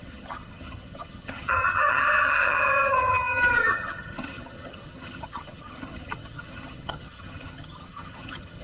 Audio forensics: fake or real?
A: fake